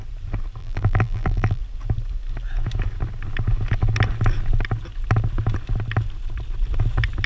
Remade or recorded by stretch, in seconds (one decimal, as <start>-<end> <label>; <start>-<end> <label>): 0.0-0.6 recorded; 0.6-1.6 remade; 1.6-7.3 recorded